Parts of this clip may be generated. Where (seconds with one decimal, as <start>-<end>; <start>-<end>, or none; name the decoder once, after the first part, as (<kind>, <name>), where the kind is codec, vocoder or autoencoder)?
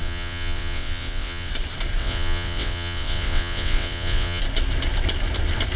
0.0-1.5 (vocoder, WaveNeXt); 2.0-4.4